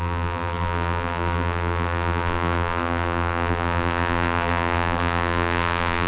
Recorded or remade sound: remade